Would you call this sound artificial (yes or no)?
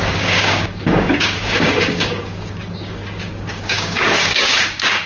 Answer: yes